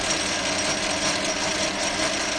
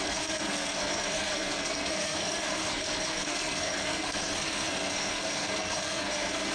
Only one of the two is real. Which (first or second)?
first